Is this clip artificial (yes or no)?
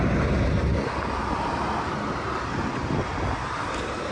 no